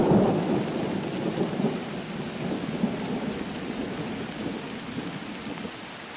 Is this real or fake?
real